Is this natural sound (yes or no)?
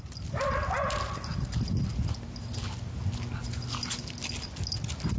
yes